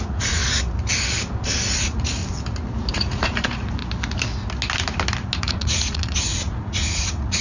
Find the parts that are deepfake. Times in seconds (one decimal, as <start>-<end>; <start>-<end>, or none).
0.0-0.4; 1.8-2.2; 2.9-3.8; 5.4-7.4